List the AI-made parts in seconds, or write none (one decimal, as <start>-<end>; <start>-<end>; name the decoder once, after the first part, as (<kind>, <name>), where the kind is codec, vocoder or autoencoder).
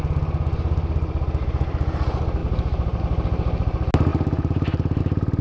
2.4-3.0 (vocoder, BigVGAN v2); 4.1-5.0